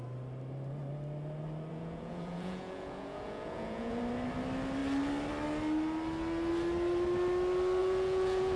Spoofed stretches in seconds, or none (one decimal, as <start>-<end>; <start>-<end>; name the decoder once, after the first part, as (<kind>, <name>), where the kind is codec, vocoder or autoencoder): 1.7-4.0 (vocoder, Vocos); 7.8-8.6